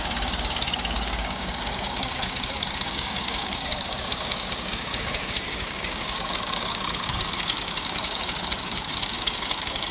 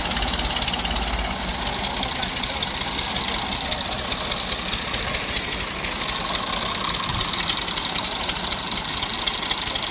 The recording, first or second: second